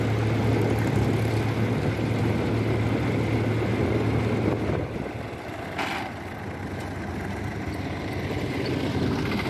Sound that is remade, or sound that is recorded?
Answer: recorded